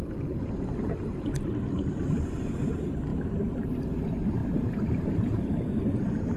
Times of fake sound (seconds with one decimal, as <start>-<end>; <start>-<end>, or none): 3.1-3.8; 4.4-6.4